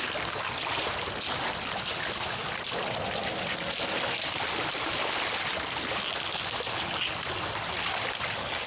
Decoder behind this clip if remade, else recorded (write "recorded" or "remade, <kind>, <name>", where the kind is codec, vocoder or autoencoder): recorded